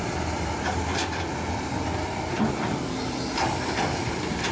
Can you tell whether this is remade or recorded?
remade